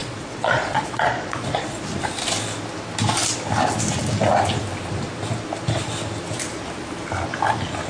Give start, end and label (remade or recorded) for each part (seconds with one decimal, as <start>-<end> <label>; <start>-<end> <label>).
0.0-1.8 remade; 1.8-7.9 recorded